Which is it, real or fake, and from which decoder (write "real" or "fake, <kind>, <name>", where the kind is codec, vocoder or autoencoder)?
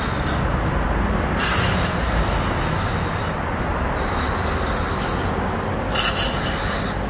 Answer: real